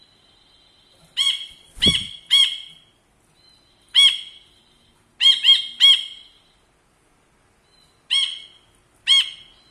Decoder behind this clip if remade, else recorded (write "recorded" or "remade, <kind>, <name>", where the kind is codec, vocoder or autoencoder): recorded